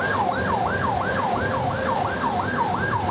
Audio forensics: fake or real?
real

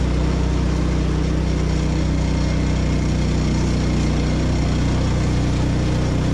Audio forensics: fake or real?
real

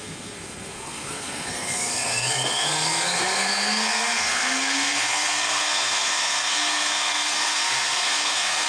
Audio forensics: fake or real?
fake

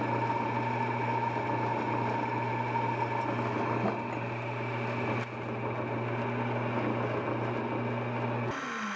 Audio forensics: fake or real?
real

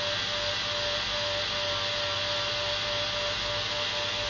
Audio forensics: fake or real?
real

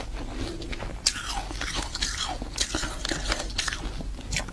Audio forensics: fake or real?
real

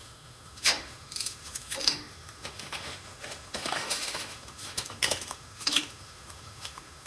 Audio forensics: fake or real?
fake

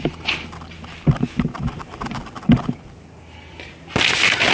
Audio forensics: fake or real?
real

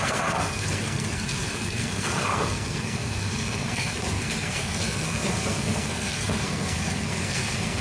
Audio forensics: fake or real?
fake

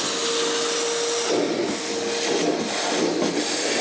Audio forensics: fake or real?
real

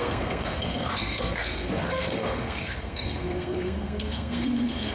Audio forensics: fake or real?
fake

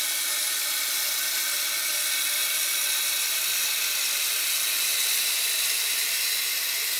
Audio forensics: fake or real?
real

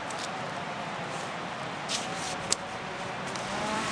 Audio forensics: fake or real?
fake